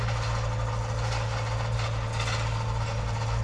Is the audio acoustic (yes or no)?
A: yes